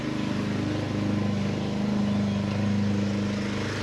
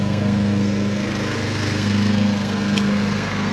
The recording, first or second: first